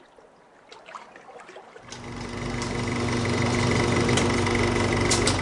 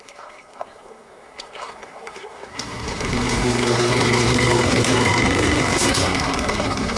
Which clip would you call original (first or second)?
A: first